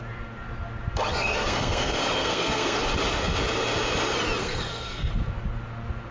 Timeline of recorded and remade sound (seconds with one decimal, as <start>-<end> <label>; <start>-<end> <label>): 0.0-1.1 recorded; 1.1-2.8 remade; 2.8-4.4 recorded; 4.4-5.1 remade; 5.1-6.1 recorded